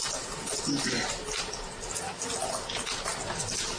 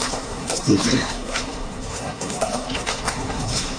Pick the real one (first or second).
first